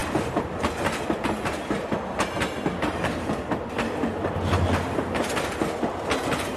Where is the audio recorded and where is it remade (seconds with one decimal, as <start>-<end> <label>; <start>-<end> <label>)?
0.0-6.6 recorded